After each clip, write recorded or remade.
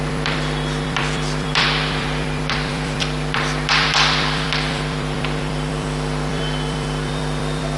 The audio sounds remade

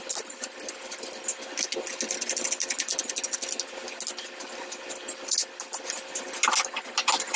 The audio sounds recorded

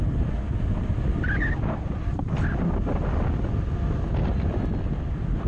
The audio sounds recorded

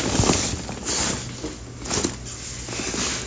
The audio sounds recorded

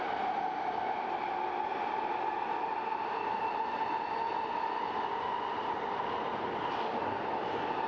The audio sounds recorded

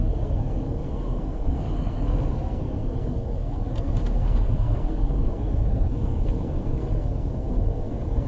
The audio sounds remade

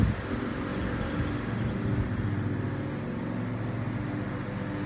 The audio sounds recorded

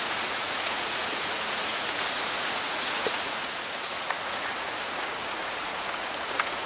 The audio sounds remade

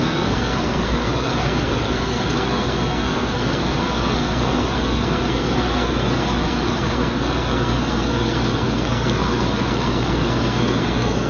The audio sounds remade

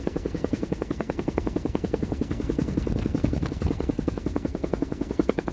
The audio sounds remade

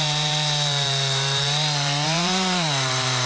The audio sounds remade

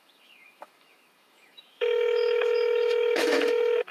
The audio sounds remade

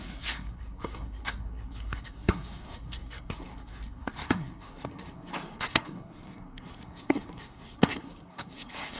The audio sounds remade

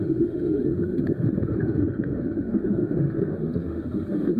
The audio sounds remade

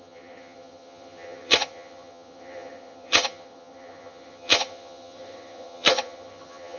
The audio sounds remade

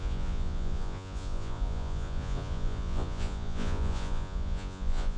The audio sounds remade